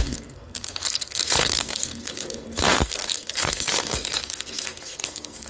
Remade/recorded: remade